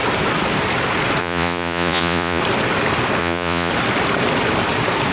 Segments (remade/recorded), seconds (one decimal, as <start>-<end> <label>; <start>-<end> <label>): 0.0-1.2 recorded; 1.2-2.4 remade; 2.4-3.2 recorded; 3.2-3.7 remade; 3.7-5.1 recorded